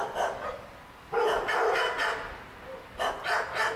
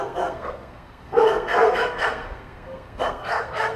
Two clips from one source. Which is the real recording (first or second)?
first